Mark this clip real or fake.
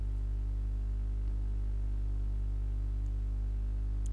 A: real